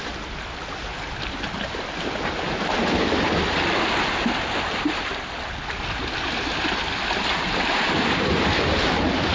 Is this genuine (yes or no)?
yes